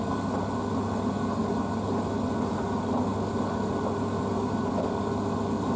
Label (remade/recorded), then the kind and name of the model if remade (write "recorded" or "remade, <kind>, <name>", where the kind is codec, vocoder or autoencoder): recorded